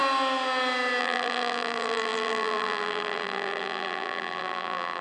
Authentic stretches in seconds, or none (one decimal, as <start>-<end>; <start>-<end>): 0.0-1.0